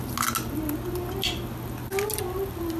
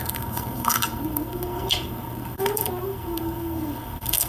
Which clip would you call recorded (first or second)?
first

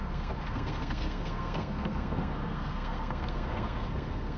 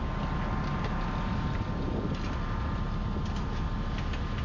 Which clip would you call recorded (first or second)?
second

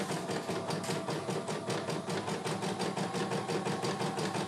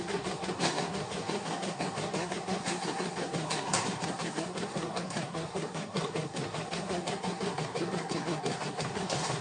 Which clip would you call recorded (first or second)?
first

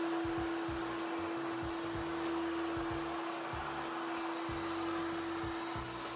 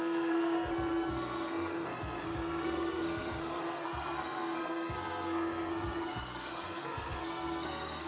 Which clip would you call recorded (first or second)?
first